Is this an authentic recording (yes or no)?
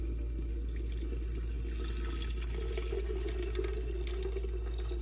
yes